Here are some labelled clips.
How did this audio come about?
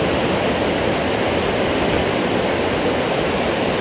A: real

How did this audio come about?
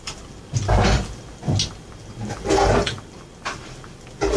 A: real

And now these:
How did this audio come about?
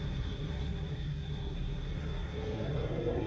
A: fake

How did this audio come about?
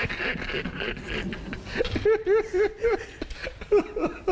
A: real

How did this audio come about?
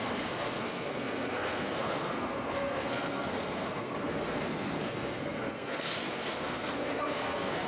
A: fake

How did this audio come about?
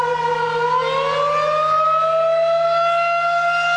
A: real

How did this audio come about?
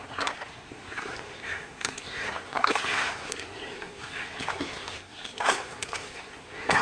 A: fake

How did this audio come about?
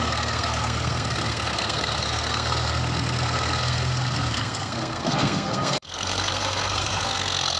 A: fake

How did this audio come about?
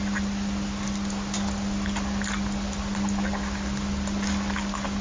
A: real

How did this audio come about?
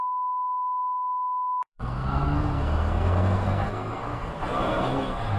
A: fake